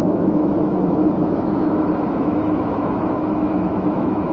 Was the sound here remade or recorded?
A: remade